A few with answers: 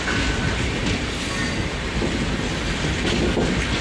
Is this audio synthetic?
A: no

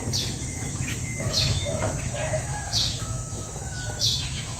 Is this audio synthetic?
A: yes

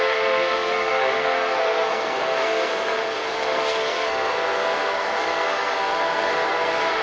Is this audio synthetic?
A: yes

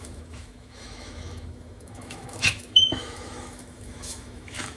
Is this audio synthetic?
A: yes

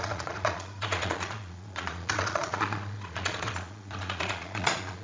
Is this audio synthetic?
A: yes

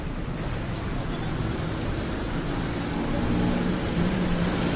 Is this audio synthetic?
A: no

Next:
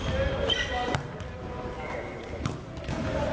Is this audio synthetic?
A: no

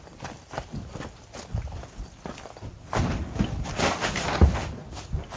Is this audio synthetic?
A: no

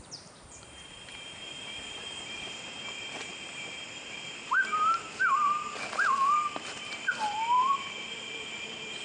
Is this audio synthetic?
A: yes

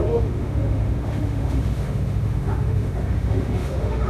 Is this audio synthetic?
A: yes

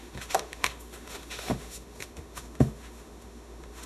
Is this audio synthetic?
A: yes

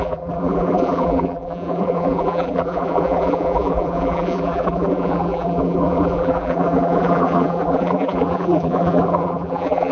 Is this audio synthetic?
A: yes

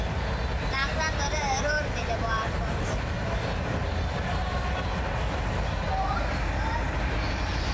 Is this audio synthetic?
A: yes